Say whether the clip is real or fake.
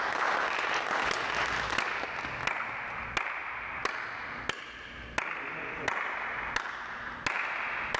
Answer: real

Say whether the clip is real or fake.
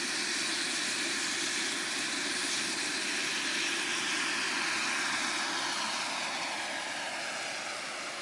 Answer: real